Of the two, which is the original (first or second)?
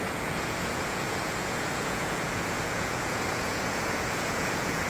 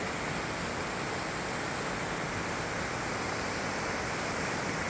second